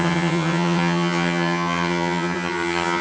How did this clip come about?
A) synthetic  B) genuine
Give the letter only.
A